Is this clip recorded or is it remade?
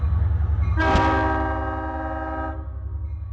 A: recorded